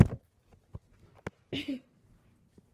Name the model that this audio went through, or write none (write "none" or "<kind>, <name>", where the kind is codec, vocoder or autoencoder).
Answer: none